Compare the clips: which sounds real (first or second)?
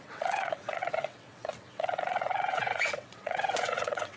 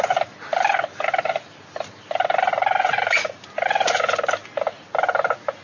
second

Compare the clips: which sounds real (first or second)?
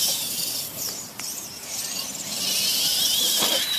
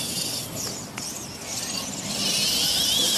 second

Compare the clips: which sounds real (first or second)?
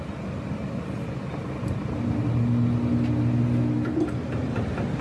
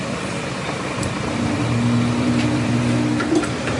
first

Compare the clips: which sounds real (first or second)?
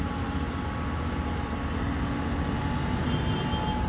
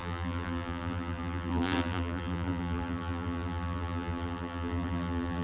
first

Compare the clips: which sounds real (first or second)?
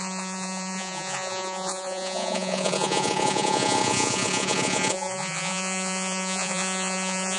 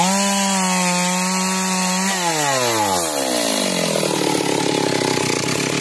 second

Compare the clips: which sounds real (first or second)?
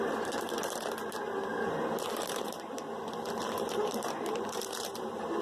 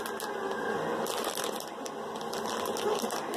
second